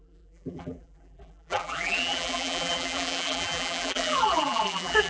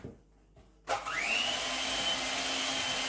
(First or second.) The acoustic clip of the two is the second